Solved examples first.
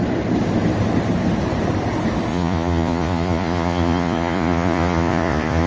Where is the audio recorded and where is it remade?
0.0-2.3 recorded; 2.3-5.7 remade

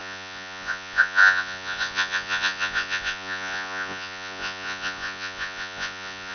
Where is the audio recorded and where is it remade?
0.0-6.3 remade

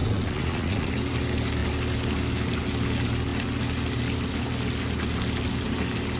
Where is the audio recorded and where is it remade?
0.0-0.9 remade; 0.9-6.2 recorded

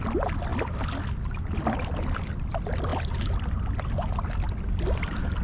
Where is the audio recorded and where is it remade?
0.0-5.4 recorded

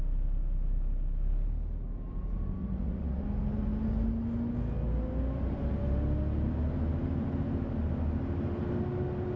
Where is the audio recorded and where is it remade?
0.0-2.6 recorded; 2.6-3.2 remade; 3.2-9.4 recorded

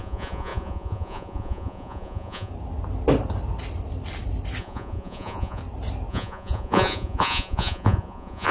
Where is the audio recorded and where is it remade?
0.0-2.5 remade; 2.5-4.6 recorded; 4.6-5.6 remade; 5.6-6.1 recorded; 6.1-8.5 remade

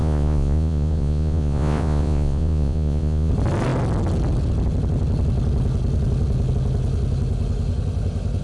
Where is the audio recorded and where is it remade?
0.0-3.3 remade; 3.3-8.4 recorded